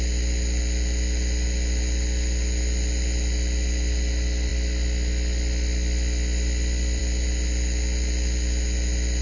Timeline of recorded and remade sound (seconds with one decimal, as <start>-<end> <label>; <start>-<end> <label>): 0.0-9.2 recorded

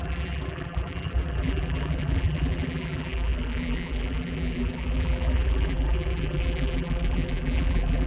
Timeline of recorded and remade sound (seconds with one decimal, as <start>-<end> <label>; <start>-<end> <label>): 0.0-8.1 remade

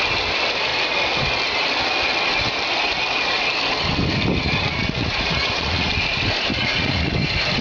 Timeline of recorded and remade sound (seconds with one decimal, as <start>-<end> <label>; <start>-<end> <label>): 0.0-4.6 recorded; 4.6-5.9 remade; 5.9-6.5 recorded; 6.5-7.1 remade; 7.1-7.6 recorded

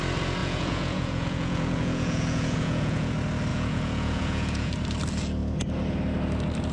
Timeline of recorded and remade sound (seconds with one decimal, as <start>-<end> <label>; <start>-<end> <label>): 0.0-0.4 recorded; 0.4-3.1 remade; 3.1-3.5 recorded; 3.5-4.7 remade; 4.7-6.7 recorded